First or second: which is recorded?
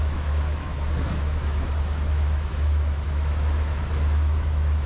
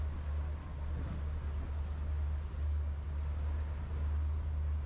second